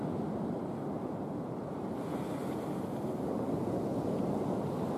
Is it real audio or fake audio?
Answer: real